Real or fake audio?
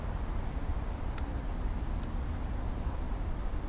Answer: fake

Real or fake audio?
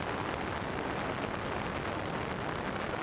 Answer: real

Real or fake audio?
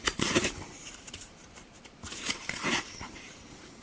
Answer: fake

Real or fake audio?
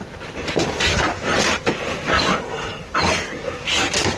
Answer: real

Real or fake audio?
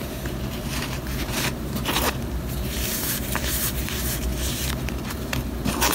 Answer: fake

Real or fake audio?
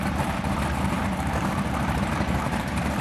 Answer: fake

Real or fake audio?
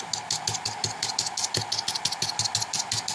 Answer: real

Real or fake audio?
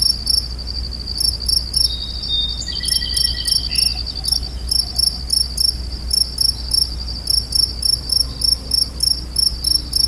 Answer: real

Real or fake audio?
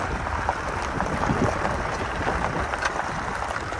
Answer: real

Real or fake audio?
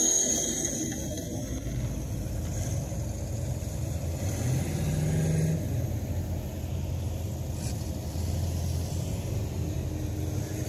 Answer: real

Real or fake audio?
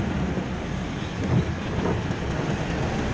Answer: real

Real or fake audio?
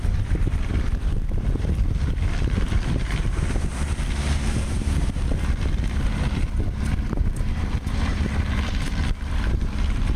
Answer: fake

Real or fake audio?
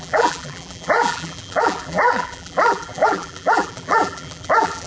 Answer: fake